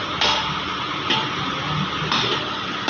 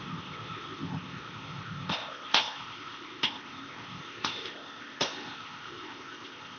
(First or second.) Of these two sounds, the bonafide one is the first